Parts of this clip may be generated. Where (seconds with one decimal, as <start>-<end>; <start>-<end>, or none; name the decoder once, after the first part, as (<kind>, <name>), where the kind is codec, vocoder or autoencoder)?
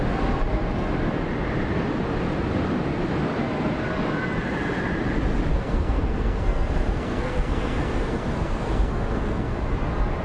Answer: 5.5-9.6 (codec, SNAC)